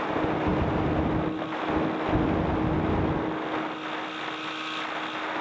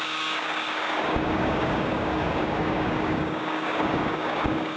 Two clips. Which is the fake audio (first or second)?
second